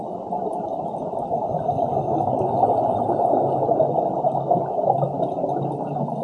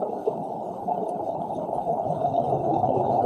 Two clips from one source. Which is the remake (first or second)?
second